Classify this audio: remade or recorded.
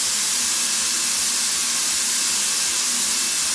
recorded